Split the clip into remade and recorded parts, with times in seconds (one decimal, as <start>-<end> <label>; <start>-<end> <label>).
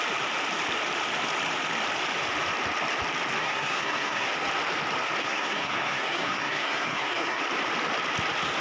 0.0-3.4 recorded; 3.4-4.3 remade; 4.3-5.2 recorded; 5.2-7.4 remade; 7.4-8.6 recorded